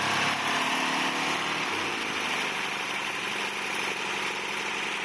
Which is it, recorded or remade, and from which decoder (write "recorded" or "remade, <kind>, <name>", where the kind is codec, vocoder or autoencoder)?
recorded